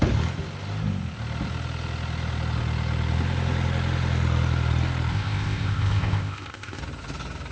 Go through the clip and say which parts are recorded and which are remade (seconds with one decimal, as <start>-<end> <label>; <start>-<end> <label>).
0.0-5.1 recorded; 5.1-6.8 remade; 6.8-7.5 recorded